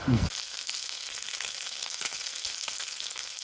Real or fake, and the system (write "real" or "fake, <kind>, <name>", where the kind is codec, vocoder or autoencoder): fake, codec, SNAC